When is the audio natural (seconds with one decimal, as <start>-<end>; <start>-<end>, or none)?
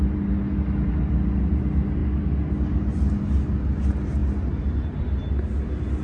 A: 0.0-6.0